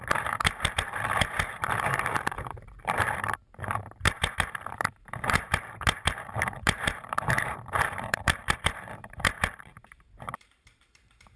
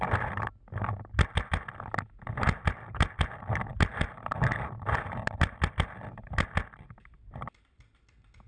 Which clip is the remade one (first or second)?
first